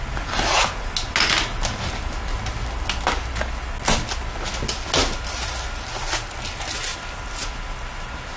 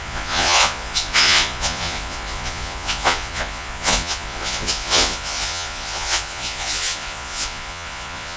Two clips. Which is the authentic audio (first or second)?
first